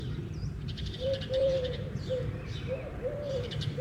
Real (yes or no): no